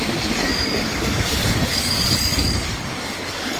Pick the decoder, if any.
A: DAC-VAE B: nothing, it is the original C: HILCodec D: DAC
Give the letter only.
D